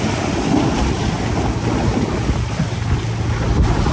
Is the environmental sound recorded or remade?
recorded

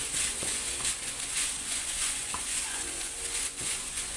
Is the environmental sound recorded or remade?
remade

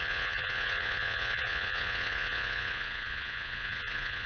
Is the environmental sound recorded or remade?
remade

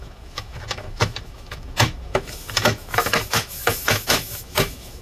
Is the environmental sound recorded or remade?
remade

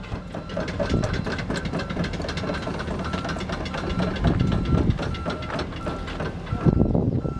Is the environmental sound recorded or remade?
recorded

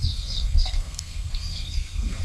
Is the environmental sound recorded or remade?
remade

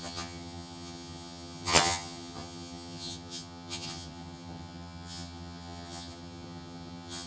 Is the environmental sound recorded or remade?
remade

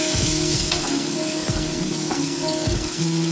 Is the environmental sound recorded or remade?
remade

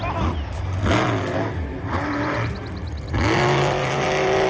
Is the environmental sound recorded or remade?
recorded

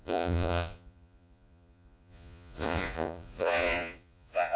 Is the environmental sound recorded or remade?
remade